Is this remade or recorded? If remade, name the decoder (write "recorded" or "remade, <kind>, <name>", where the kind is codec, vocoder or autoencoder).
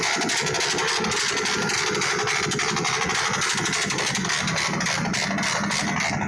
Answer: recorded